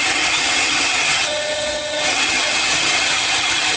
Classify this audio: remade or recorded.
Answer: remade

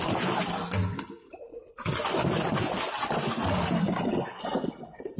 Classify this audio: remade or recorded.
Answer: recorded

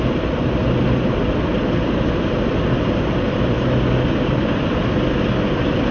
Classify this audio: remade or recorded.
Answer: recorded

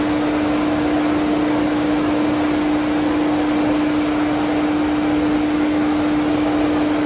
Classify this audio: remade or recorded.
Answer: recorded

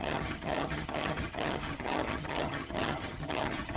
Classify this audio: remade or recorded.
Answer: remade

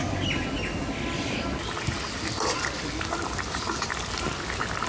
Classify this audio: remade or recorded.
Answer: recorded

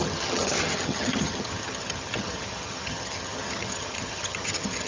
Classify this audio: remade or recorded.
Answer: remade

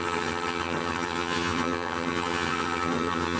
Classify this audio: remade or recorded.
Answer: remade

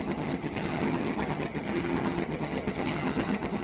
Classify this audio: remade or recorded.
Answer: remade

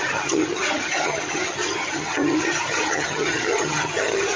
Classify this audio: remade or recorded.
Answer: remade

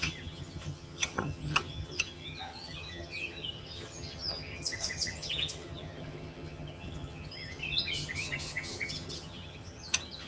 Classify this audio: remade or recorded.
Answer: remade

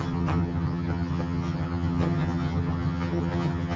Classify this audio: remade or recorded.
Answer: remade